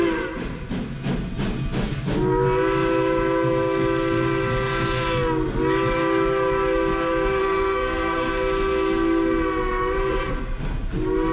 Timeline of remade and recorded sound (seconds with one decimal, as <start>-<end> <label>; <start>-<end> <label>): 0.0-7.4 recorded; 7.4-8.3 remade; 8.3-11.3 recorded